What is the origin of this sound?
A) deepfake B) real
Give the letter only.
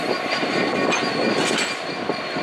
B